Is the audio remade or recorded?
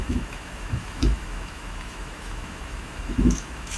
remade